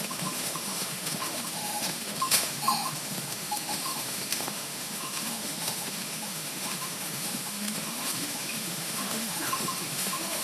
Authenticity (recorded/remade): remade